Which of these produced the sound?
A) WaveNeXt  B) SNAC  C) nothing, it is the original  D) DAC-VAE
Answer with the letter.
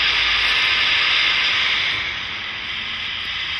C